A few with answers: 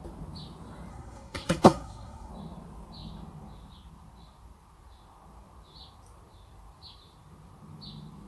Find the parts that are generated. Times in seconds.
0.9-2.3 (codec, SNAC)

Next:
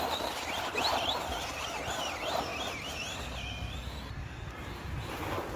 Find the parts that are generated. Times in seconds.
none

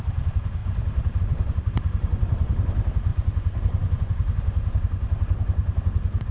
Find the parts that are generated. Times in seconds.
none

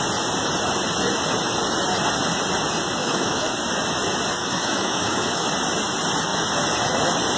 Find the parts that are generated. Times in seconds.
3.0-3.5 (autoencoder, DAC-VAE); 4.4-5.5